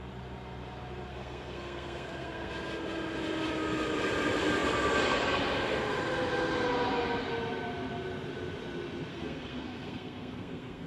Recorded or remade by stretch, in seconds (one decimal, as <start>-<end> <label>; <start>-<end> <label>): 0.0-1.1 recorded; 1.1-2.5 remade; 2.5-9.1 recorded; 9.1-10.9 remade